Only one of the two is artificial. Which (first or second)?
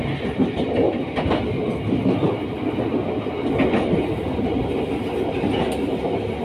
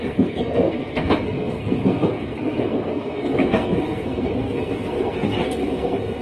second